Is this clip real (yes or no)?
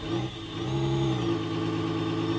yes